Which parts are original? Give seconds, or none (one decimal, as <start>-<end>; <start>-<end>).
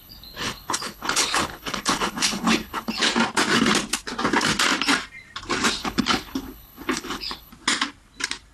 3.1-5.8; 7.5-8.5